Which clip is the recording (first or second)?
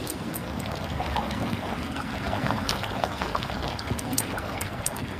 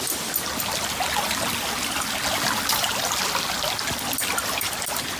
second